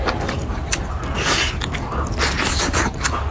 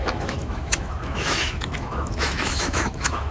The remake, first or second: second